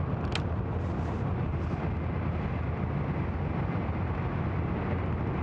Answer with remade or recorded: recorded